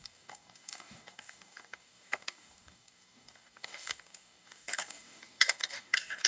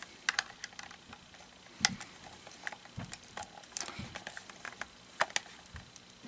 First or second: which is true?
second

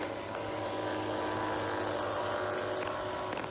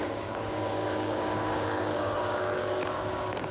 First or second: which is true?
first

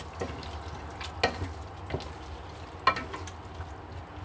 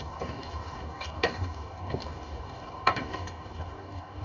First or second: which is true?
first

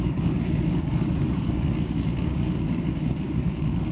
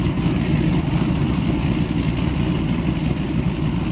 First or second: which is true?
second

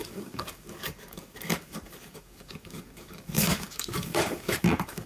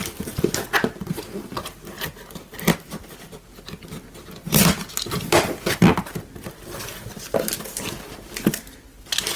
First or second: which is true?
second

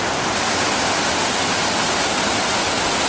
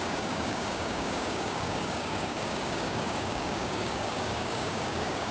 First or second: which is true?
first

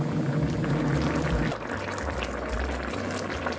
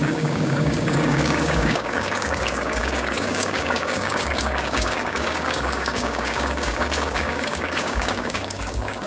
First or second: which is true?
first